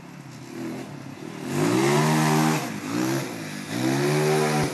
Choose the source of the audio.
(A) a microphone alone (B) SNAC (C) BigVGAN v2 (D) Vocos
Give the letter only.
A